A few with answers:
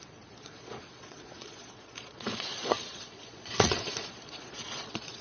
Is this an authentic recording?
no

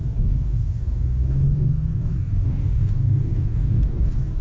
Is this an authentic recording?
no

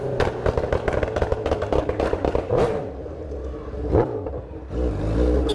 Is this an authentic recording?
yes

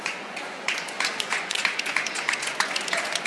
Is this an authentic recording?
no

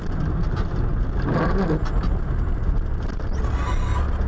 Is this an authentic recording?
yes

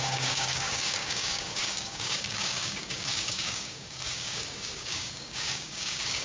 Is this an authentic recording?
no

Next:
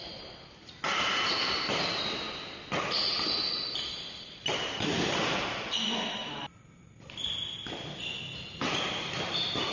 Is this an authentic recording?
yes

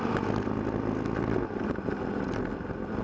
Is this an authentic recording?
yes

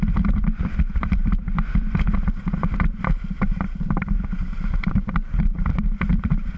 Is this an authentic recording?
no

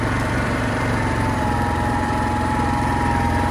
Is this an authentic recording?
no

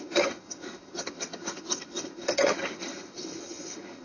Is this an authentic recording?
no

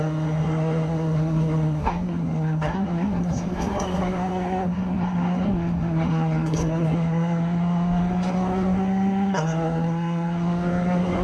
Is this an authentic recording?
no